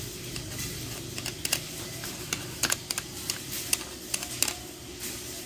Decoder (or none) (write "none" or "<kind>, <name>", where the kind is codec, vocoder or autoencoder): none